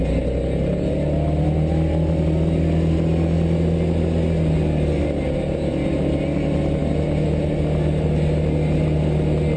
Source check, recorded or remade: recorded